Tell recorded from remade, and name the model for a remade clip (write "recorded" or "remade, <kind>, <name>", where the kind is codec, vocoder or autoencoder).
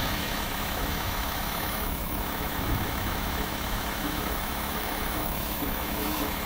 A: remade, autoencoder, DAC-VAE